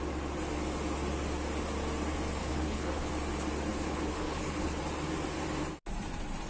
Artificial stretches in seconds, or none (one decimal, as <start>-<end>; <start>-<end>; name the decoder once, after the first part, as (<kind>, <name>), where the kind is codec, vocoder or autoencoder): 2.4-3.1 (codec, HILCodec); 3.7-4.8

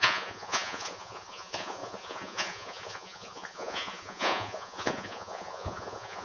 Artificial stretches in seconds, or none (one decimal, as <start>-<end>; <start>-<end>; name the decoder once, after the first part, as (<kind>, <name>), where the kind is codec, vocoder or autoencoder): 0.0-6.2 (vocoder, Vocos)